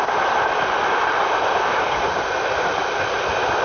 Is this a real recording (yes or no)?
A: yes